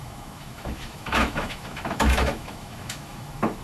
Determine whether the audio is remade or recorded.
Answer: remade